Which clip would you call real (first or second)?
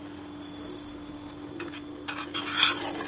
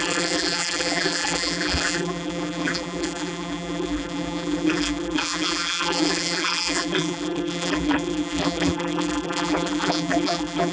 first